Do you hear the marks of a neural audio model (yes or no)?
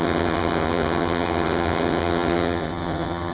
yes